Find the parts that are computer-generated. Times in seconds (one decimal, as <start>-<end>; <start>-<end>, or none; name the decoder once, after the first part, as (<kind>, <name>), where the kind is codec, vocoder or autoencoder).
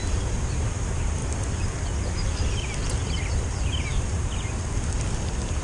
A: none